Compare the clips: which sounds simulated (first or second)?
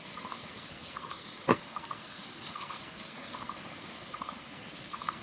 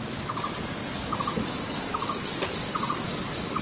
first